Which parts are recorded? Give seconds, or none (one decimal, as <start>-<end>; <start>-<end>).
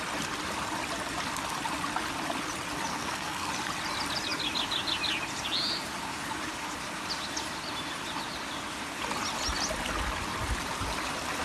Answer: 0.0-2.9; 3.5-11.4